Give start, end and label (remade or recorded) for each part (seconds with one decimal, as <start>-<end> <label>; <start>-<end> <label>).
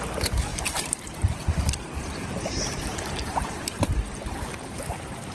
0.0-0.5 recorded; 0.5-3.7 remade; 3.7-5.3 recorded